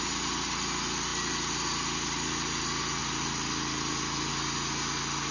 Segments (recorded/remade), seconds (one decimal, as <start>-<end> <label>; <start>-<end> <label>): 0.0-5.3 recorded